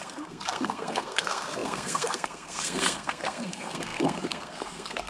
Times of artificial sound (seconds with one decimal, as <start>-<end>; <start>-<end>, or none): 0.0-5.1